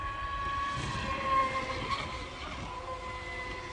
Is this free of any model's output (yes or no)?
yes